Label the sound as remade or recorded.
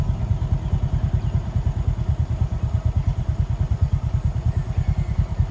recorded